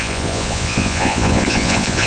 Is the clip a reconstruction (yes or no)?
yes